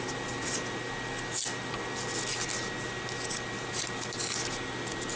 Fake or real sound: real